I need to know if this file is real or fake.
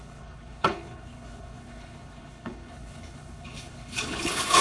fake